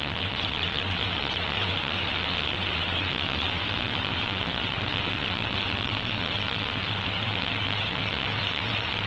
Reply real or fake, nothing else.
fake